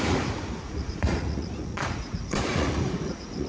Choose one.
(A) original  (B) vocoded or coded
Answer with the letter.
B